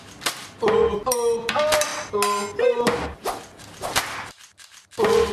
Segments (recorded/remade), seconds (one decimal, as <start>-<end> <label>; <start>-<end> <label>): 0.0-5.3 recorded